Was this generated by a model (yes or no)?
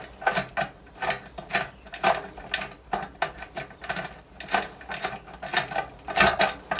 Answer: no